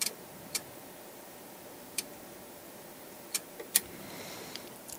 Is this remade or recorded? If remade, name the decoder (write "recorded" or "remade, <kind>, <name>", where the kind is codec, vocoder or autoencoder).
remade, vocoder, BigVGAN v2